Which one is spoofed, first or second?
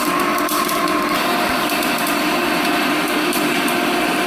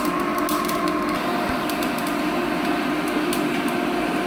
first